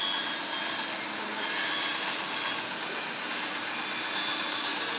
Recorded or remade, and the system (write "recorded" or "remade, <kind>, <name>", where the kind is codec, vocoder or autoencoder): recorded